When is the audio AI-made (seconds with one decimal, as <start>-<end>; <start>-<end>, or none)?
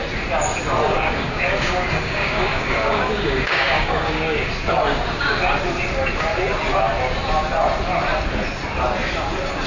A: 0.9-4.5